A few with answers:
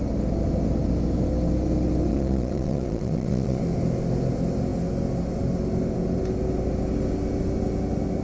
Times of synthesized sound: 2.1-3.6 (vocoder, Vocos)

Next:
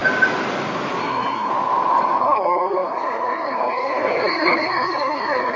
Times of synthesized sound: 1.0-1.5 (codec, SNAC); 2.2-5.6

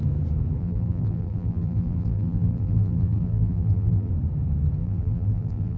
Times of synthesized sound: 0.6-4.1 (vocoder, BigVGAN v2); 4.8-5.8

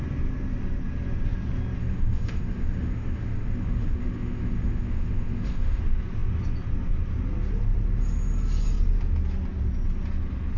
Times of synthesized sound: 1.8-5.8 (autoencoder, DAC-VAE)

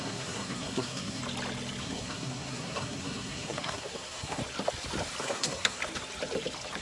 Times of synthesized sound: 0.0-1.2 (codec, SNAC); 1.8-4.4; 5.2-5.8

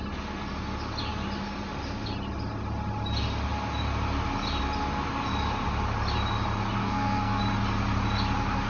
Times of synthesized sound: 6.8-7.4 (codec, SNAC)

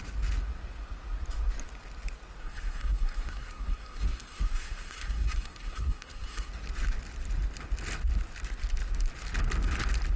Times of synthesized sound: 2.4-6.5 (codec, SNAC)